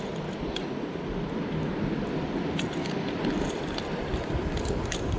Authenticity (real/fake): real